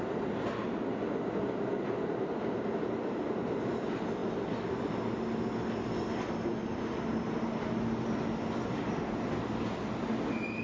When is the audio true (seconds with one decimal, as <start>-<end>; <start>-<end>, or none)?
0.0-10.6